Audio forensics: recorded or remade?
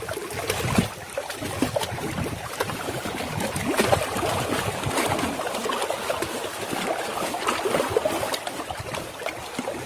remade